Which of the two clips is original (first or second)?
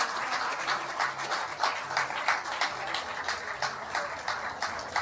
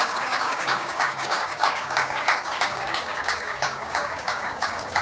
first